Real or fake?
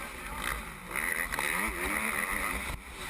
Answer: real